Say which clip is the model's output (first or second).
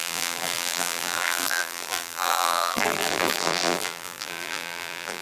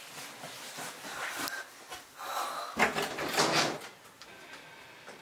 first